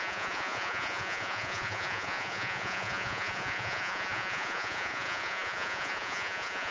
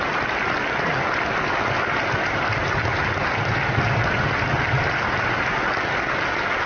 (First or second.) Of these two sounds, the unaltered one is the second